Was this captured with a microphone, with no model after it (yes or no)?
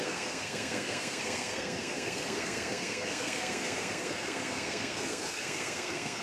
no